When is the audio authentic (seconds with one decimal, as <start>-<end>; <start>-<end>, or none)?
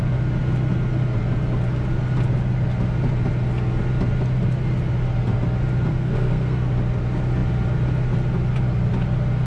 0.0-5.9; 6.7-9.5